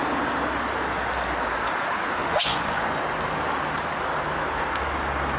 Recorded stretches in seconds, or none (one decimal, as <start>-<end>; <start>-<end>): 0.0-2.2; 3.0-5.4